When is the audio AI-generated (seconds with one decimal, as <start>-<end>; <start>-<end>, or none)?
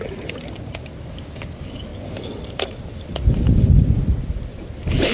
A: none